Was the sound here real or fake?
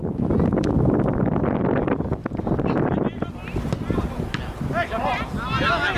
real